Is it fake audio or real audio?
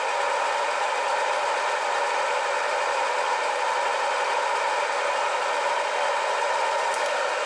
real